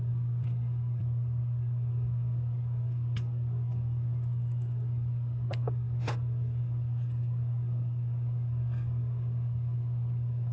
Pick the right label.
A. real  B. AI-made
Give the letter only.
B